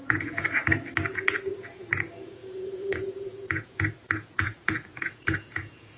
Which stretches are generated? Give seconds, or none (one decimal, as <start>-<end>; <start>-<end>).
0.0-0.6; 1.1-6.0